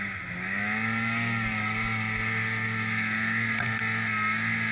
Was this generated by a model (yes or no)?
no